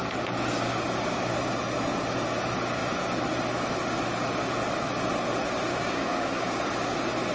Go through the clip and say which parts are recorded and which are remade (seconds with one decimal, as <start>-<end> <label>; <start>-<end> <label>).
0.0-5.7 recorded; 5.7-6.6 remade; 6.6-7.3 recorded